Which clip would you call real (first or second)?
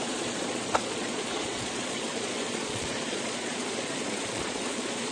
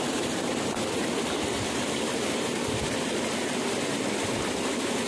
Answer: second